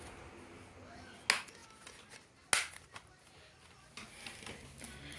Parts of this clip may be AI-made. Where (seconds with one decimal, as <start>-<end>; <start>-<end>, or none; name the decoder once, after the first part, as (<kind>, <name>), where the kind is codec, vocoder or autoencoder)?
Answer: none